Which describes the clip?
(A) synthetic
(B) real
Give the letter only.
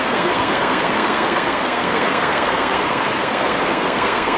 A